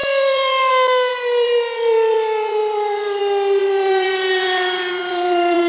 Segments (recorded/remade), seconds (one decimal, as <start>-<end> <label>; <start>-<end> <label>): 0.0-0.7 remade; 0.7-1.1 recorded; 1.1-3.2 remade; 3.2-3.6 recorded; 3.6-5.7 remade